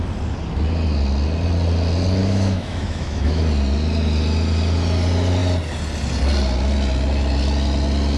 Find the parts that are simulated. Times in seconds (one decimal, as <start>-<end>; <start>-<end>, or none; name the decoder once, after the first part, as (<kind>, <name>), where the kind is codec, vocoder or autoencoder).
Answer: 2.2-3.4 (autoencoder, DAC-VAE)